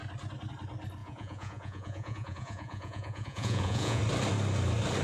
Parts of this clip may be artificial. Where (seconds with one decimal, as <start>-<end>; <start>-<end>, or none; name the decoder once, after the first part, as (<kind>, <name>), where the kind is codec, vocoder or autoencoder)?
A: 1.0-4.0 (vocoder, Vocos)